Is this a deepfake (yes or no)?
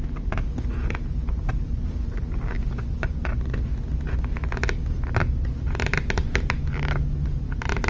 no